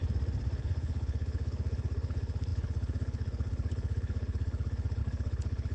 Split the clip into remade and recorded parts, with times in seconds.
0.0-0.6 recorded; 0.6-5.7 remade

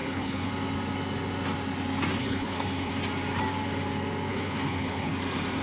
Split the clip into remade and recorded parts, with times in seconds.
0.0-0.5 remade; 0.5-2.2 recorded; 2.2-2.9 remade; 2.9-4.3 recorded; 4.3-5.1 remade; 5.1-5.6 recorded